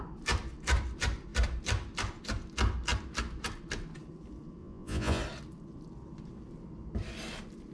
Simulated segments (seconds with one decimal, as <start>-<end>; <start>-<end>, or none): 4.6-5.2